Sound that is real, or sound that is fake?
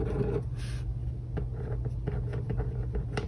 real